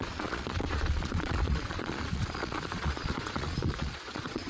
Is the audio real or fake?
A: fake